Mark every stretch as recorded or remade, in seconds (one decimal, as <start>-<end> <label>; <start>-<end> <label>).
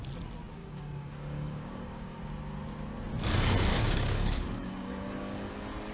0.0-0.6 recorded; 0.6-2.2 remade; 2.2-3.7 recorded; 3.7-5.5 remade; 5.5-5.9 recorded